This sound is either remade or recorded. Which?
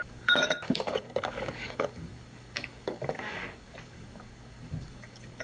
remade